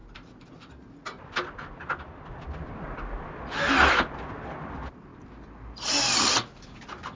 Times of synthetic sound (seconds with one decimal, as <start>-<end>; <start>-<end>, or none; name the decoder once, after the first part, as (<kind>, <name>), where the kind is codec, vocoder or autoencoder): none